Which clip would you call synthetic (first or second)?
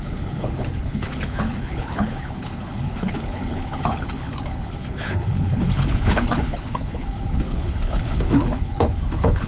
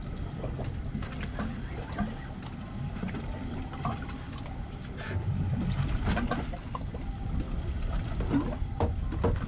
first